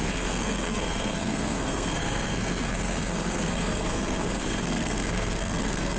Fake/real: fake